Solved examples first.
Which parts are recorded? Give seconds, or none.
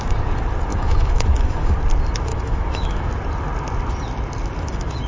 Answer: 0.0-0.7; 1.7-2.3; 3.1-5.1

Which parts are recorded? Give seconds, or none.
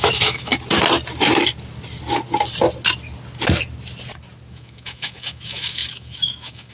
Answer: 0.5-4.5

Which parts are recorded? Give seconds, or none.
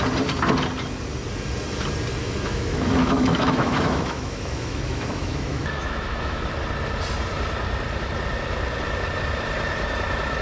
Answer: 0.0-2.2; 6.5-10.4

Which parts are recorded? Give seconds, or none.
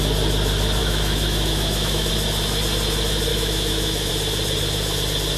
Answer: 0.0-0.8; 2.1-3.3; 4.1-5.4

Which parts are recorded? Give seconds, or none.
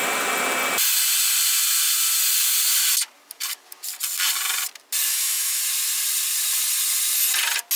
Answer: 0.0-5.1; 5.6-7.8